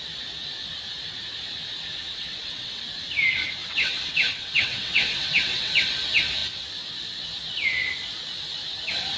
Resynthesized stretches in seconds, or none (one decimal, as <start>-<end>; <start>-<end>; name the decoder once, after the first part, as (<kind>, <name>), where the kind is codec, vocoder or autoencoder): 2.0-2.8 (vocoder, WaveNeXt); 3.6-5.9